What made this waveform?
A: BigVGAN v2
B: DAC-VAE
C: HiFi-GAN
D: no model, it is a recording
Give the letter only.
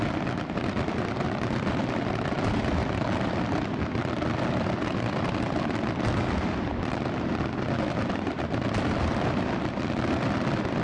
A